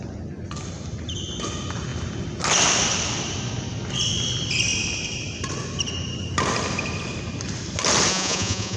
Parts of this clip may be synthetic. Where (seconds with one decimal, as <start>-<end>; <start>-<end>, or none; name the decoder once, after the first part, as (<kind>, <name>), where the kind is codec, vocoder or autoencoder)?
8.1-8.8 (vocoder, Vocos)